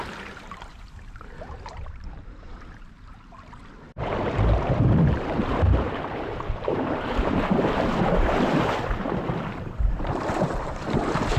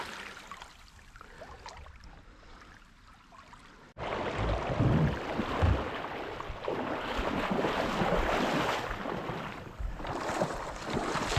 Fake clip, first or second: first